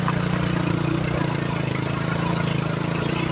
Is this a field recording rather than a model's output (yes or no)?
yes